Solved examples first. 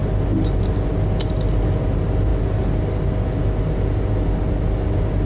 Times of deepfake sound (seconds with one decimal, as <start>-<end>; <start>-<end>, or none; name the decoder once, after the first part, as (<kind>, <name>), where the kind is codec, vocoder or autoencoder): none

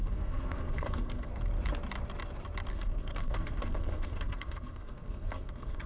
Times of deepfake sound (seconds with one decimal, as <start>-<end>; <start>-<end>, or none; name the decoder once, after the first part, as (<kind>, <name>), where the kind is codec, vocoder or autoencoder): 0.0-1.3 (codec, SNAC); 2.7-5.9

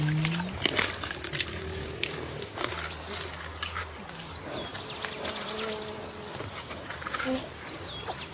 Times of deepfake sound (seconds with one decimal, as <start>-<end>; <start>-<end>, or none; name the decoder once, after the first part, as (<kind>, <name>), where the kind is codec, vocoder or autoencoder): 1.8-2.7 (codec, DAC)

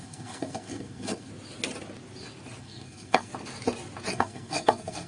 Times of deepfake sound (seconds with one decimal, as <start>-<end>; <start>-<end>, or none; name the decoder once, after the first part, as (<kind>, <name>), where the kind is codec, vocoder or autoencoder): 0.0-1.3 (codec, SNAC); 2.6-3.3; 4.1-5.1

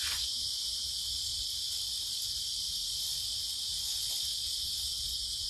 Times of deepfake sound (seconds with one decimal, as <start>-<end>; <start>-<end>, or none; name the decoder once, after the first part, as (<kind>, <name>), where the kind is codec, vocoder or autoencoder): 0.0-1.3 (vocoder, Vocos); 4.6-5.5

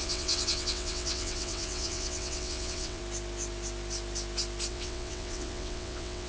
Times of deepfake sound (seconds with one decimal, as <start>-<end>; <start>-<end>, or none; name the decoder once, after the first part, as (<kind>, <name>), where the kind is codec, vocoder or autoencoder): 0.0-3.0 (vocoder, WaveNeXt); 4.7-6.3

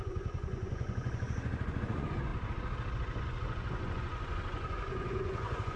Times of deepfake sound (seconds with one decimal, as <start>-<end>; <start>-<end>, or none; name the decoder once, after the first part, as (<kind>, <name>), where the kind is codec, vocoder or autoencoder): 0.0-2.3 (vocoder, Vocos); 3.2-5.8